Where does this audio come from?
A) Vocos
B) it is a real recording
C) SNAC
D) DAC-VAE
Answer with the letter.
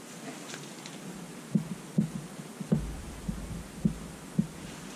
B